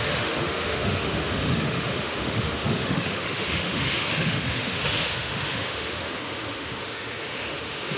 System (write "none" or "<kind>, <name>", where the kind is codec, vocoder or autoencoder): autoencoder, DAC-VAE